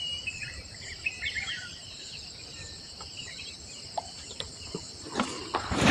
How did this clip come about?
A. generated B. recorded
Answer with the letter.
A